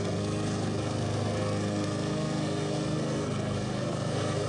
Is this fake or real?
fake